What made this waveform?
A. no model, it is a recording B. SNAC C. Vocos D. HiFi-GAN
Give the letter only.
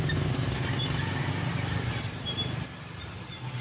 A